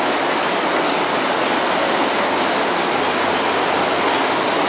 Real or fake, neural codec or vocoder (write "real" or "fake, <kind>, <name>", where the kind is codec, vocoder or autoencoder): real